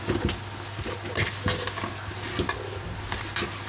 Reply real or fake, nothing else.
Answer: real